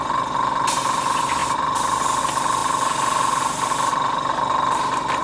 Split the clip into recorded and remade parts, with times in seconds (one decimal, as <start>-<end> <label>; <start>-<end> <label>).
0.0-1.4 recorded; 1.4-2.2 remade; 2.2-3.9 recorded; 3.9-4.4 remade; 4.4-5.2 recorded